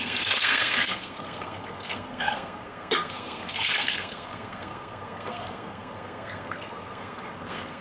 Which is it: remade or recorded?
remade